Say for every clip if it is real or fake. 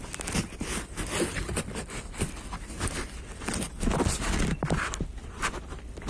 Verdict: real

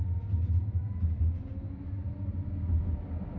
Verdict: real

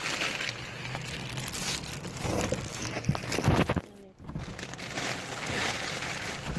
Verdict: real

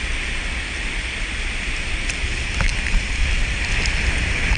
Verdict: real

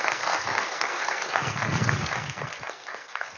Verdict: fake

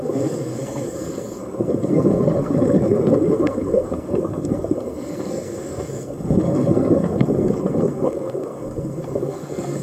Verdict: fake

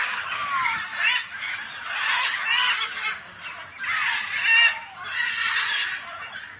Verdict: real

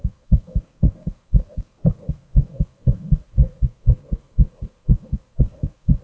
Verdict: fake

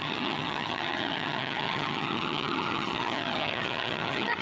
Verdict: fake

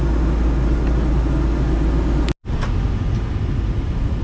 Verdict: real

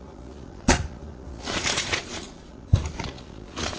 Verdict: fake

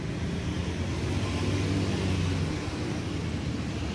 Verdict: real